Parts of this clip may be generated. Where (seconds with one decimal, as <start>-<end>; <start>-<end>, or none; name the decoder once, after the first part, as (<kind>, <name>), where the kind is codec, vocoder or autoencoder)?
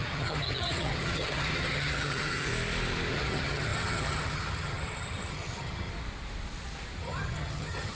0.0-2.5 (vocoder, HiFi-GAN); 3.1-5.9; 7.0-8.0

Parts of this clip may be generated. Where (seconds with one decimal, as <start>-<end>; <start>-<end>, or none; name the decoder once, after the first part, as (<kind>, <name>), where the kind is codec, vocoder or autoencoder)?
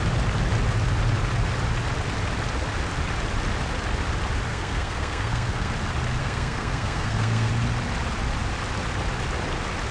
4.5-5.7 (codec, SNAC); 6.2-7.5